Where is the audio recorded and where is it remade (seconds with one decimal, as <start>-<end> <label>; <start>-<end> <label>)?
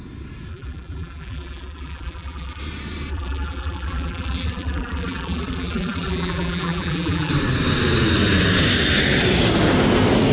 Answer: 0.0-0.5 recorded; 0.5-2.6 remade; 2.6-3.1 recorded; 3.1-7.3 remade; 7.3-10.3 recorded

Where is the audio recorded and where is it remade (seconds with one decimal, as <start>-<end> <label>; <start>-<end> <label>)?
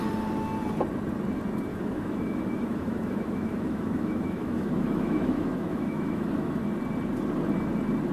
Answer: 0.0-1.7 recorded; 1.7-6.6 remade; 6.6-8.1 recorded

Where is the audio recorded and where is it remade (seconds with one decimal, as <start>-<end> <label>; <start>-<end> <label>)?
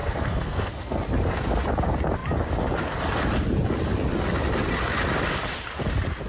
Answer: 0.0-1.0 remade; 1.0-6.3 recorded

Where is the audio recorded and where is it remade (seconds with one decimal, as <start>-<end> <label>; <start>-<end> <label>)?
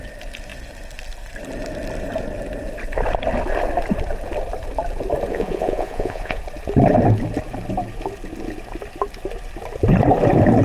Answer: 0.0-5.3 recorded; 5.3-6.4 remade; 6.4-10.6 recorded